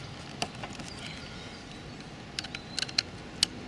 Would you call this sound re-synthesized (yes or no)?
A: no